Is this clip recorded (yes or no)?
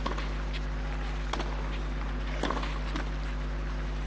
yes